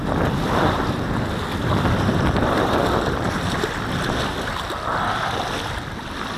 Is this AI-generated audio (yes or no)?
no